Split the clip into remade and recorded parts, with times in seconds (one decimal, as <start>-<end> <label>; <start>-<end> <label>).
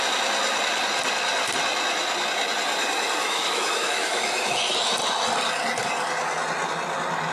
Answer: 0.0-3.2 recorded; 3.2-4.8 remade; 4.8-7.3 recorded